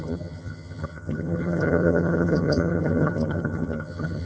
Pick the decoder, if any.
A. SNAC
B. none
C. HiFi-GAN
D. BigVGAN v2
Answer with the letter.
C